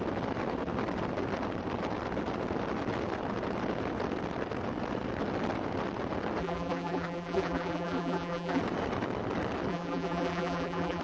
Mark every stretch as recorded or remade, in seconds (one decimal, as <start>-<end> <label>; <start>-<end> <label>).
0.0-6.4 recorded; 6.4-8.6 remade; 8.6-9.7 recorded; 9.7-11.0 remade